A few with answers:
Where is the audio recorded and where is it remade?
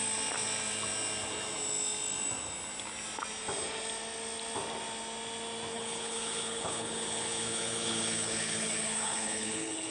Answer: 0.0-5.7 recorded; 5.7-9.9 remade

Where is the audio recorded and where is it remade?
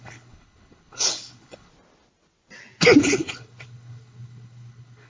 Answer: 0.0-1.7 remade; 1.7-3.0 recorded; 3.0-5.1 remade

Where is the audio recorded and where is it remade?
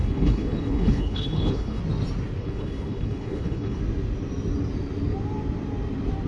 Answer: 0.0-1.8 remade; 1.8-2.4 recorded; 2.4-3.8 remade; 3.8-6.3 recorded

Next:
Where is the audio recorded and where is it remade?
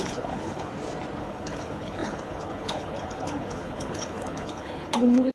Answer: 0.0-0.7 remade; 0.7-1.2 recorded; 1.2-5.3 remade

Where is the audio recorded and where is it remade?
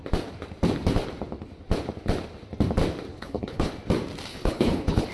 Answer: 0.0-3.1 recorded; 3.1-3.7 remade; 3.7-4.3 recorded; 4.3-5.1 remade